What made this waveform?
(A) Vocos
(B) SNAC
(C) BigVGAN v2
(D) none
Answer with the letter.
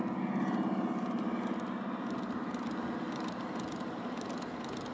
D